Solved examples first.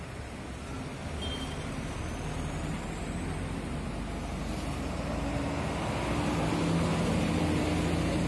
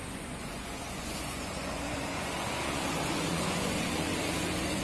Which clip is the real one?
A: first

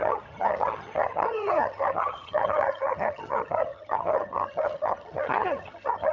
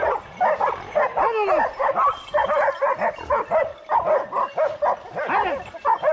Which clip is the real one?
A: second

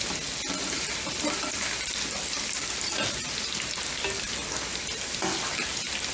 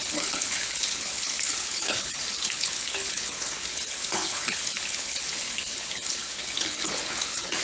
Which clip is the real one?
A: first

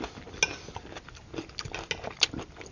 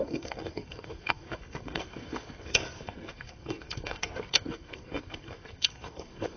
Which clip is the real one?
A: first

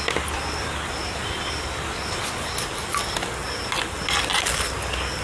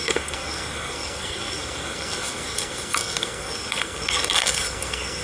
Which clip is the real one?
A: first